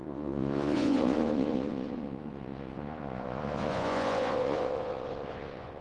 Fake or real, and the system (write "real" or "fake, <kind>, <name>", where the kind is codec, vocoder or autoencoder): fake, vocoder, Vocos